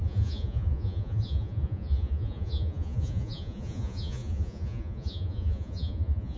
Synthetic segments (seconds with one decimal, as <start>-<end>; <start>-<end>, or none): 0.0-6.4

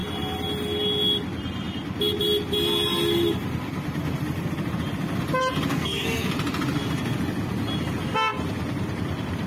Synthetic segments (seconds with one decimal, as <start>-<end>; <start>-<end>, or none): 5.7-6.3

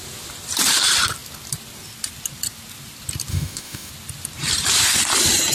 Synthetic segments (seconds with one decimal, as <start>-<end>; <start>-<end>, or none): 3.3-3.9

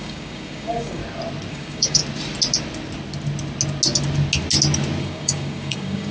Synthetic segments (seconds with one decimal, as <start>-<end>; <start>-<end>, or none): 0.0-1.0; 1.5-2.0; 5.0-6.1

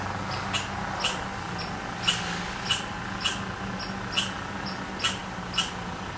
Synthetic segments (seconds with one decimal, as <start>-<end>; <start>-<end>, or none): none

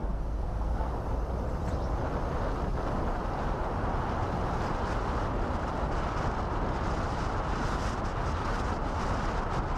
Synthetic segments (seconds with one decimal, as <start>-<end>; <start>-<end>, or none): 0.0-0.9

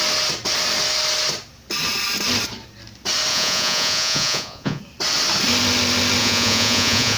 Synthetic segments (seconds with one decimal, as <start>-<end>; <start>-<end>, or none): 3.3-4.8; 6.2-7.2